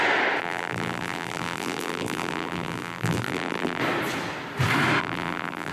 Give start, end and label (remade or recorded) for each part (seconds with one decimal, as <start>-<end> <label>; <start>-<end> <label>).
0.0-0.4 recorded; 0.4-3.8 remade; 3.8-5.0 recorded; 5.0-5.7 remade